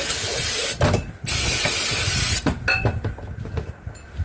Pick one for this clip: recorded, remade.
recorded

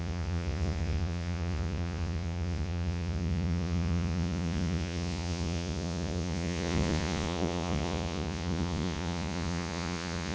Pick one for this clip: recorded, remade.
remade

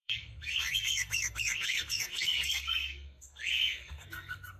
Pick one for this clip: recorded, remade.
remade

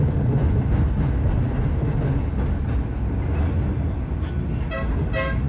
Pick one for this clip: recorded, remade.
recorded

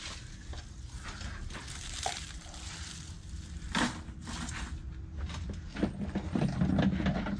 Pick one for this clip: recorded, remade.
recorded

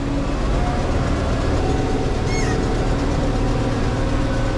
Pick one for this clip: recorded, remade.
recorded